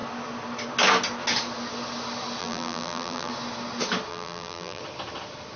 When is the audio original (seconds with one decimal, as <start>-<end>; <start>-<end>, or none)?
0.0-2.4; 3.3-4.1; 4.8-5.6